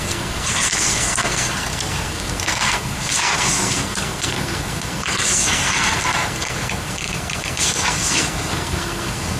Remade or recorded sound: remade